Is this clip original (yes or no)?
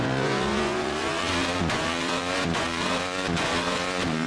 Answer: no